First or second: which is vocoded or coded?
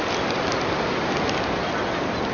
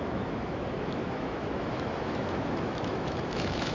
second